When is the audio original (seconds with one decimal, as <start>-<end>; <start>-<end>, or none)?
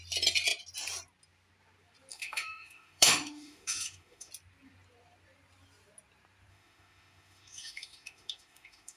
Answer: 0.0-2.1; 4.3-6.5